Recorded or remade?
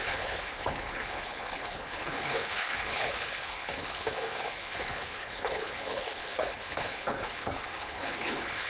remade